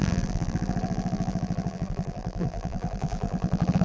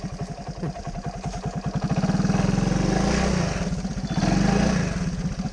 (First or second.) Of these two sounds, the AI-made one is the first